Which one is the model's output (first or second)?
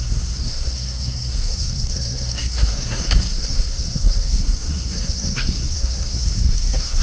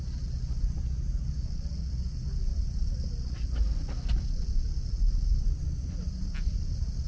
first